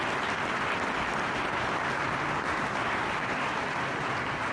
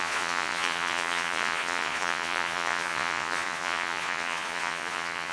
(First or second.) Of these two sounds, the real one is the first